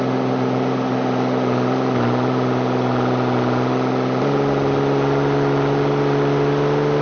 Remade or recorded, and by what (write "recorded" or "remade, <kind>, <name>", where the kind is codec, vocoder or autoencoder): recorded